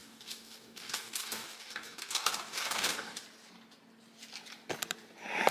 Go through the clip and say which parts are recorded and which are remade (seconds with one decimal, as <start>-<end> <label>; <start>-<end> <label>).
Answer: 0.0-3.2 remade; 3.2-5.5 recorded